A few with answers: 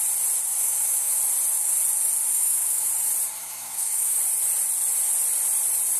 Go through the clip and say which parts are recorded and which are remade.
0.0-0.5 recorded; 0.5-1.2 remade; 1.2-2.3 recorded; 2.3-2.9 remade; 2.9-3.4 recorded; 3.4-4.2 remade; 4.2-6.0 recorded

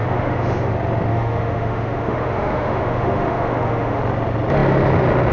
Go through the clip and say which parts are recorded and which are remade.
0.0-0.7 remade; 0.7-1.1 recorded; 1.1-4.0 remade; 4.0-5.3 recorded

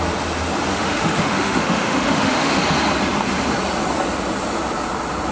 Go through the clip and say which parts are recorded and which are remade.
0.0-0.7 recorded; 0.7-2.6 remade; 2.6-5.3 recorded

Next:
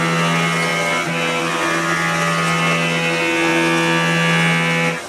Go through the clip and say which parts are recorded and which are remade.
0.0-5.1 recorded

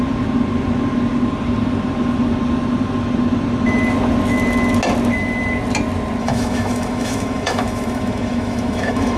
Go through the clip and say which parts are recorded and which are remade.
0.0-6.2 recorded; 6.2-9.2 remade

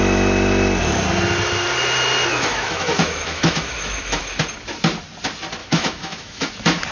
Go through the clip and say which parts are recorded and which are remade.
0.0-2.3 recorded; 2.3-4.2 remade; 4.2-5.6 recorded; 5.6-6.5 remade; 6.5-6.9 recorded